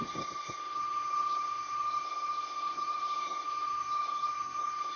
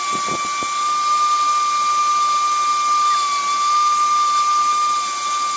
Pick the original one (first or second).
second